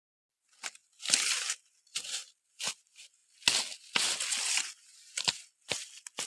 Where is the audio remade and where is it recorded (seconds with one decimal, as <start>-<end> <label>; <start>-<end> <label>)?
0.0-6.3 recorded